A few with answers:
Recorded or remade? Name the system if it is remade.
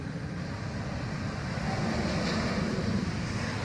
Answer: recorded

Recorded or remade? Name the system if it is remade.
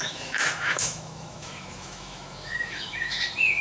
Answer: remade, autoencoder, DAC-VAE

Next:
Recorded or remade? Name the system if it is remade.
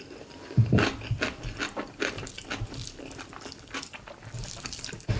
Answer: remade, vocoder, BigVGAN v2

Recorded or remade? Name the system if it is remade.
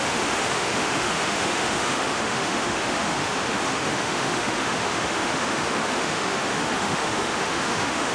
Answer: remade, autoencoder, DAC-VAE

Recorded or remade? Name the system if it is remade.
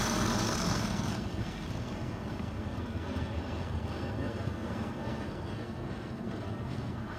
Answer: remade, codec, SNAC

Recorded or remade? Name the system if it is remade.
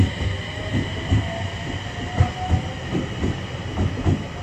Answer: recorded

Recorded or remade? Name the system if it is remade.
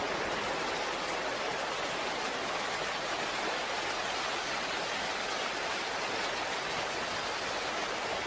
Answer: recorded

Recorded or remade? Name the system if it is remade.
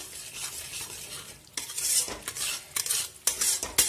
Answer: recorded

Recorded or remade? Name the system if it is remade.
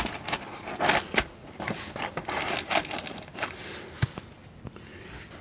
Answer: recorded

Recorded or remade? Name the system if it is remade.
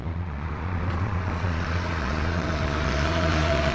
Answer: remade, vocoder, Vocos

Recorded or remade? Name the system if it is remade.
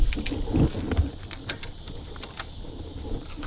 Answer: recorded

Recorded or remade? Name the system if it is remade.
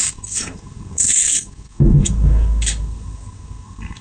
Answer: remade, codec, SNAC